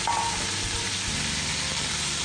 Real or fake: real